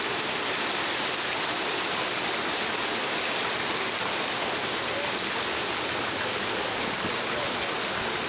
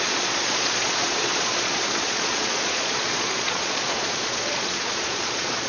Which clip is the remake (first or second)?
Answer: second